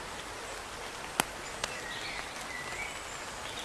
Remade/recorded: recorded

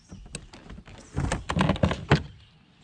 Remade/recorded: recorded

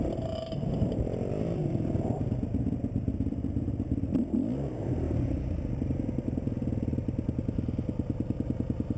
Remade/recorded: recorded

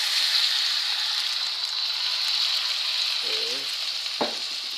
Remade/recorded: recorded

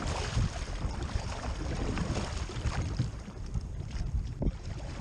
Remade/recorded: remade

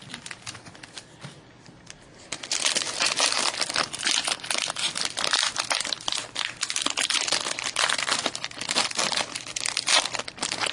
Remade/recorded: remade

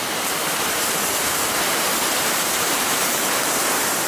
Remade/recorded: remade